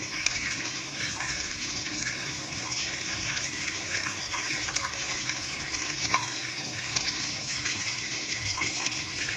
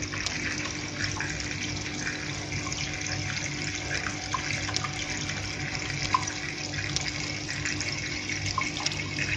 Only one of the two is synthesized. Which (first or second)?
first